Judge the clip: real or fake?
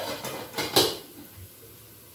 real